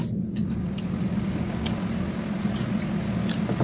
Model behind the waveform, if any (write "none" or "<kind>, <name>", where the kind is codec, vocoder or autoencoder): none